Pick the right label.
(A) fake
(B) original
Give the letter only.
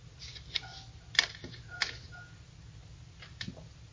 B